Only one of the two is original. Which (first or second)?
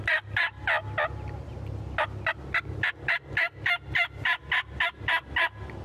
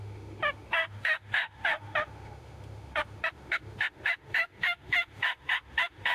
first